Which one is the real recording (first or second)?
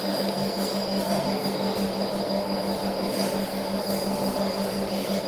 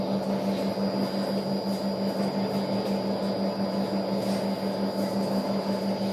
second